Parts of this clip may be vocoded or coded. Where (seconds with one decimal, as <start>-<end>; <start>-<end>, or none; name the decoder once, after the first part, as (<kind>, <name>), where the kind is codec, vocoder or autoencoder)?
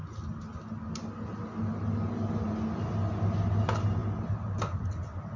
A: none